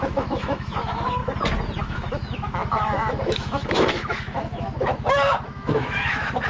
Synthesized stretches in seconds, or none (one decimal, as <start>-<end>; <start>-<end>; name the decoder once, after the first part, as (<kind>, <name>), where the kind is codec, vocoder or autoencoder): 0.0-1.2 (autoencoder, DAC-VAE); 1.8-6.5